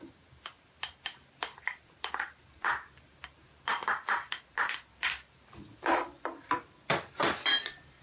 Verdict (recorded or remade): recorded